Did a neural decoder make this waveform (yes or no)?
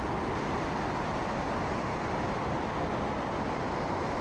no